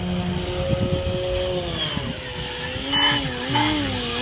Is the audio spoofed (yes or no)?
no